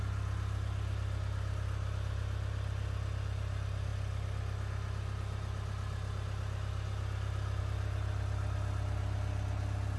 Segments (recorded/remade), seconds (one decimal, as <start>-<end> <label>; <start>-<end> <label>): 0.0-10.0 recorded